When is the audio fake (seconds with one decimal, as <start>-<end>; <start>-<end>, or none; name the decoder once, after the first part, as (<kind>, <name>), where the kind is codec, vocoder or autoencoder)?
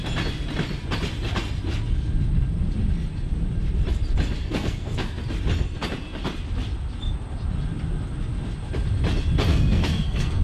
4.4-5.2 (codec, SNAC); 9.5-10.4